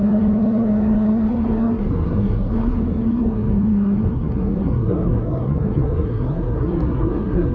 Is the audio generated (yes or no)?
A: yes